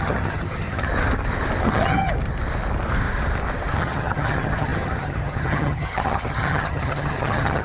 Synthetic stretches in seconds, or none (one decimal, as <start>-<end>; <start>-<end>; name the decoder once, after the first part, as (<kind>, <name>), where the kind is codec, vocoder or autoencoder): 0.0-0.9 (vocoder, HiFi-GAN); 1.6-2.1; 3.7-7.6